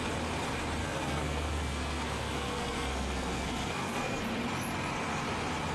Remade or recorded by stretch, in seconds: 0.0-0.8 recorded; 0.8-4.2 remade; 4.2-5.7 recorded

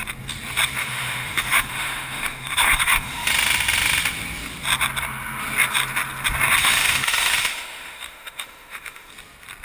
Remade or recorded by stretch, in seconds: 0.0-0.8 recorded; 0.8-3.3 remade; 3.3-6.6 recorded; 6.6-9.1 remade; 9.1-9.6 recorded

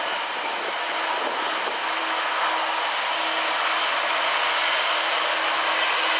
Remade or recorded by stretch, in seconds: 0.0-6.2 recorded